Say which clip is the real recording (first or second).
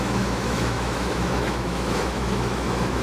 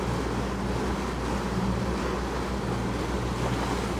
second